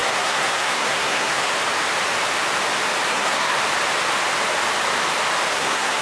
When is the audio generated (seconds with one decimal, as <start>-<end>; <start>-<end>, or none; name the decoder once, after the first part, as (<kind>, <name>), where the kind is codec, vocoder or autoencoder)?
0.0-1.5 (codec, SNAC); 3.1-3.6; 5.5-6.0